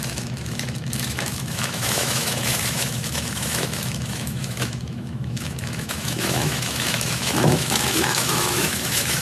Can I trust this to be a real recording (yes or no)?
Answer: no